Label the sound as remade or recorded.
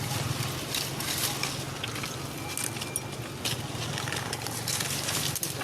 recorded